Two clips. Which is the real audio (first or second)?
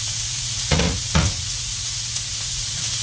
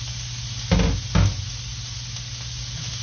second